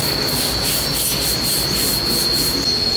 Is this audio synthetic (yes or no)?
no